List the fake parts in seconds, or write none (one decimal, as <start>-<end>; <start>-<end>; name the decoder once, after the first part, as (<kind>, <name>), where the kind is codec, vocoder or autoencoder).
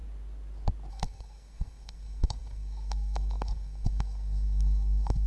0.9-5.3 (codec, SNAC)